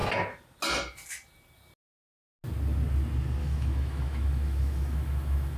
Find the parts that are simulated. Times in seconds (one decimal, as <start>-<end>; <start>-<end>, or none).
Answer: 3.4-5.6